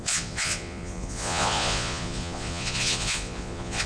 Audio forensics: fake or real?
fake